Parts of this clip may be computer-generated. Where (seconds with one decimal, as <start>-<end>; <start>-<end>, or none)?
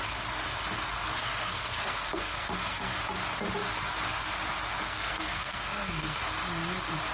1.2-3.0; 4.8-6.2